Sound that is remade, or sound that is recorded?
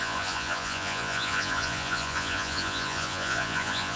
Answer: remade